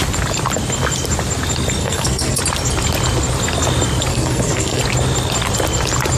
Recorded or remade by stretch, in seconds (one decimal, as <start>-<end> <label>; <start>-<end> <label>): 0.0-1.8 recorded; 1.8-2.4 remade; 2.4-4.1 recorded; 4.1-4.8 remade; 4.8-6.2 recorded